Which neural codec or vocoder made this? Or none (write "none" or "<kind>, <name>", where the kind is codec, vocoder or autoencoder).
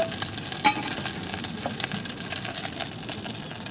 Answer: none